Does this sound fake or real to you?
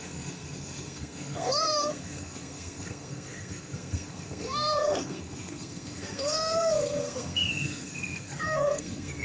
fake